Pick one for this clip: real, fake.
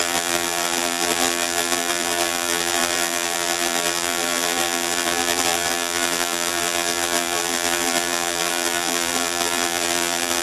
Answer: fake